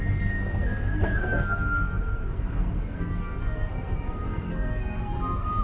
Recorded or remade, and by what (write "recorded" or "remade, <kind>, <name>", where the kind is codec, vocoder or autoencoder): remade, codec, SNAC